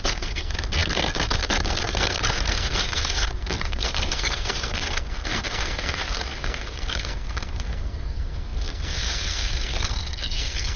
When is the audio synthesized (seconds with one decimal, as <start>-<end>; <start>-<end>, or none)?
0.0-10.8